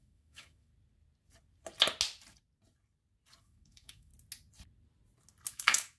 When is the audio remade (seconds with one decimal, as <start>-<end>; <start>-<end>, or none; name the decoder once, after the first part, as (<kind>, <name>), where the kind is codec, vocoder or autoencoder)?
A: 0.0-0.7 (autoencoder, DAC-VAE); 3.4-4.1; 5.5-6.0